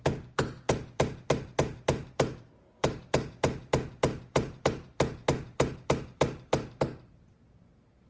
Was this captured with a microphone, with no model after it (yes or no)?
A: no